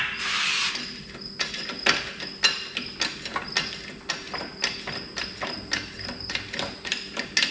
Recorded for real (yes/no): yes